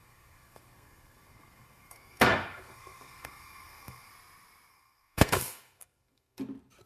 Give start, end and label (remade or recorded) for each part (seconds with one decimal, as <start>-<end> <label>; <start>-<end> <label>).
0.0-4.1 remade; 4.1-4.7 recorded; 4.7-6.4 remade; 6.4-6.9 recorded